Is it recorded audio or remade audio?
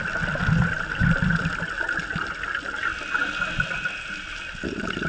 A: recorded